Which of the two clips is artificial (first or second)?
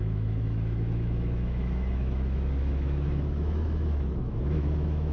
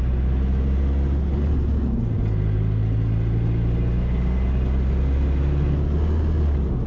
first